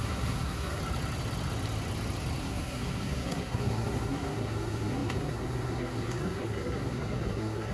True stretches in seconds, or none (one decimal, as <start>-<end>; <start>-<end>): 0.8-2.4

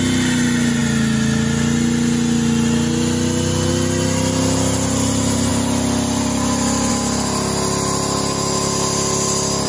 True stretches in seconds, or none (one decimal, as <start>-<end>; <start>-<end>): 0.0-9.7